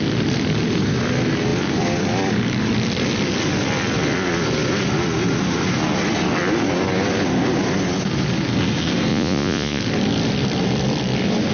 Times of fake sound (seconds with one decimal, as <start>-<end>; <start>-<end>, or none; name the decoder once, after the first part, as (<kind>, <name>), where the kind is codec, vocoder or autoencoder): 9.1-9.8 (vocoder, Vocos)